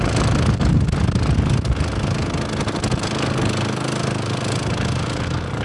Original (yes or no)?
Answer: yes